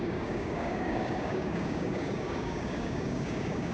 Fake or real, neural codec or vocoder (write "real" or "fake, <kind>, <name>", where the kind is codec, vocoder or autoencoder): fake, codec, DAC